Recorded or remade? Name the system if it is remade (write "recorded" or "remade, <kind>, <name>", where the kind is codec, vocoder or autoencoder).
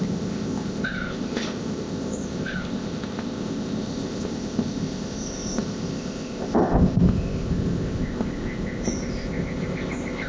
remade, codec, ZipCodec